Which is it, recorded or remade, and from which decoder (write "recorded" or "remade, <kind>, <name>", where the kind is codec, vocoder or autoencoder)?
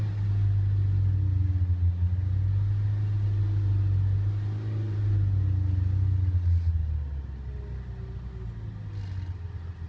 recorded